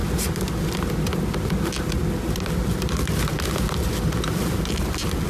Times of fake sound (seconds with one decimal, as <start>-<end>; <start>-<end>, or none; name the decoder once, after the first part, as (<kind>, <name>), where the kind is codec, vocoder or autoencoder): none